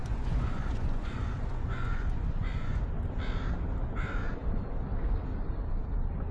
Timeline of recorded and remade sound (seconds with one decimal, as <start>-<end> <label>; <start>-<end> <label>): 0.0-2.8 remade; 2.8-6.3 recorded